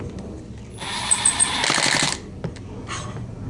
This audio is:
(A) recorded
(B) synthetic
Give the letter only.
A